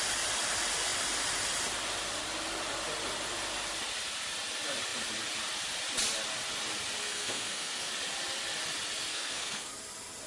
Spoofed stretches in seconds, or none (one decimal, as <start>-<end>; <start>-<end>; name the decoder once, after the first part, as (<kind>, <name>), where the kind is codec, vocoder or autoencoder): 7.0-7.9 (codec, SNAC); 9.1-9.7